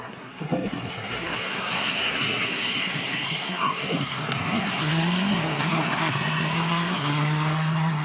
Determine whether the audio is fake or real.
fake